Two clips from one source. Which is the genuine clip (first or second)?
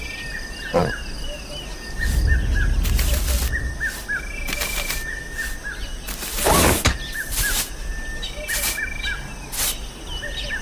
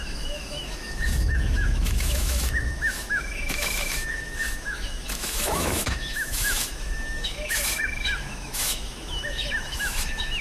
first